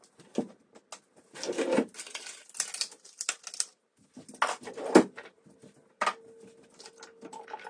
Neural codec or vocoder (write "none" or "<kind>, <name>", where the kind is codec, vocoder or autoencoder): none